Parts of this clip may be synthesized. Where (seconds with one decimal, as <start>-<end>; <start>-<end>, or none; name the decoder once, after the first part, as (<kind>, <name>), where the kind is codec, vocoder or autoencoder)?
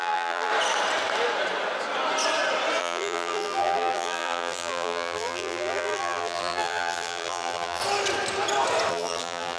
0.0-0.5 (vocoder, BigVGAN v2); 2.8-7.8; 8.9-9.6